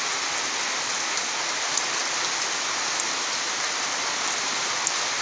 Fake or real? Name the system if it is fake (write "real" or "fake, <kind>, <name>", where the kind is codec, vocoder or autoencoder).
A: real